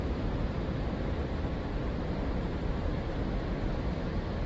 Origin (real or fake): fake